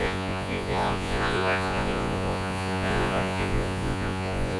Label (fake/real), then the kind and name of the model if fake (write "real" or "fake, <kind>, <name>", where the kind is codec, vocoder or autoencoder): fake, vocoder, Vocos